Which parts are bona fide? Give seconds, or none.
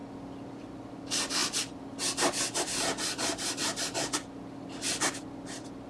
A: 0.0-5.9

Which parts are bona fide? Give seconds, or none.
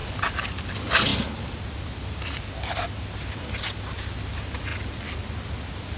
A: 0.0-6.0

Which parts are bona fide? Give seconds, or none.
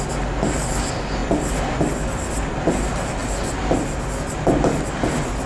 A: 0.0-5.5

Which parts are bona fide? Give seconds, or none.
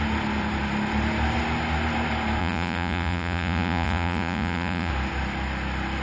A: 0.0-2.4; 4.9-6.0